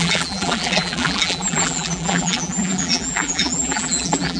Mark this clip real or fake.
fake